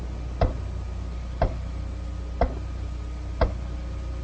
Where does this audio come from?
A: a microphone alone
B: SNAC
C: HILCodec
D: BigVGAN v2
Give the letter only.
A